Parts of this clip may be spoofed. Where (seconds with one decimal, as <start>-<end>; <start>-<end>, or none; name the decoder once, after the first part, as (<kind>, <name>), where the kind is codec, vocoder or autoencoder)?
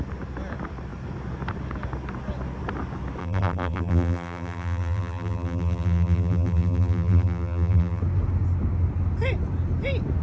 3.2-8.0 (vocoder, BigVGAN v2)